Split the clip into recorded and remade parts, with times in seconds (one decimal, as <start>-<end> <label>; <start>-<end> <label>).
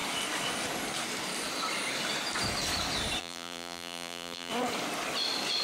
0.0-3.2 recorded; 3.2-4.5 remade; 4.5-5.6 recorded